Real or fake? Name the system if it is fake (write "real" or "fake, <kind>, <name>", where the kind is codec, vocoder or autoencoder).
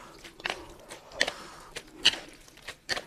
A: real